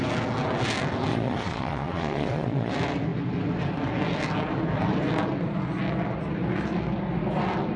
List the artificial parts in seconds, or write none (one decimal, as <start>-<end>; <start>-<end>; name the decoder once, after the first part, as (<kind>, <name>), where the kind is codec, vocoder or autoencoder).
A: 1.1-2.7 (vocoder, Vocos)